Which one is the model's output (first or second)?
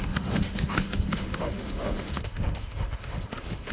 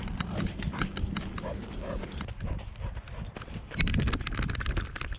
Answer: first